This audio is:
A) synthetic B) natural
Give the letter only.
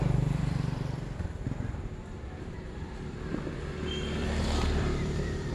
A